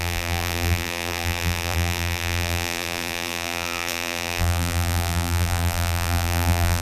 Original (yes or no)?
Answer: no